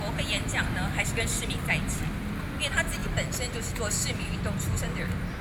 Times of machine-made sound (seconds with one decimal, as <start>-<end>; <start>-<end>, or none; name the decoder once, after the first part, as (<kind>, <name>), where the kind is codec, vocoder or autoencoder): 0.5-1.7 (vocoder, BigVGAN v2)